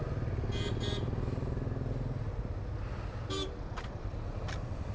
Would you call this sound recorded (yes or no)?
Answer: yes